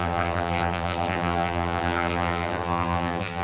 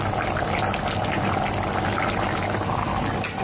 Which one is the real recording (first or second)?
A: second